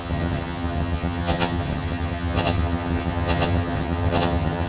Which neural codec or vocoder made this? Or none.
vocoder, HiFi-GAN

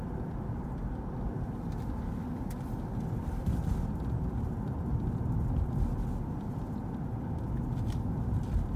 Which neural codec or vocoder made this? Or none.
none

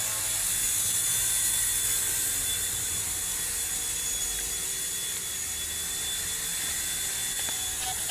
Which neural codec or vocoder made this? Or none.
vocoder, BigVGAN v2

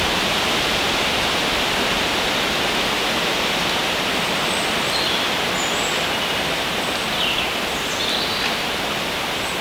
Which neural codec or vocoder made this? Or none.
none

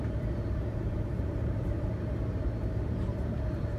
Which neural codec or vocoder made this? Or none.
vocoder, BigVGAN v2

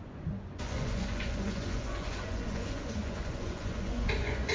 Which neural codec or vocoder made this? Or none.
vocoder, Vocos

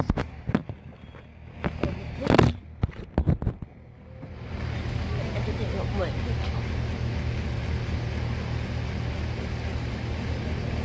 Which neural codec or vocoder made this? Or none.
none